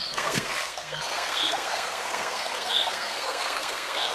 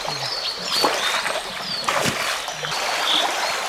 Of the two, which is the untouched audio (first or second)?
second